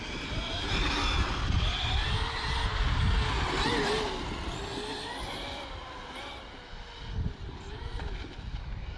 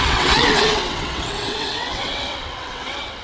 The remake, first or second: second